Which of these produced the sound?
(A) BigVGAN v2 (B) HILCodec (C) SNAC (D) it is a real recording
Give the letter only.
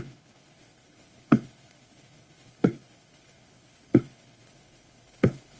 B